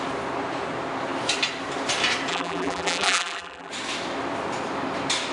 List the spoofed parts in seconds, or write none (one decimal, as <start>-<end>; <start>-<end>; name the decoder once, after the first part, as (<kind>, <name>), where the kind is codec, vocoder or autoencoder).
2.3-3.7 (vocoder, BigVGAN v2)